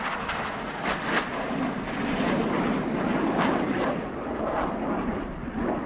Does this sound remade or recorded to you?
recorded